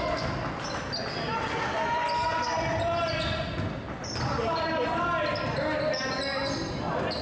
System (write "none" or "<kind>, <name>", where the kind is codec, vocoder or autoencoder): none